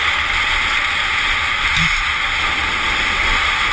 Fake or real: real